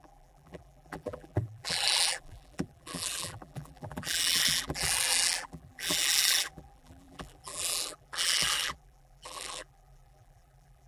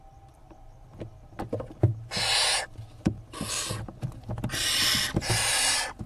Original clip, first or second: second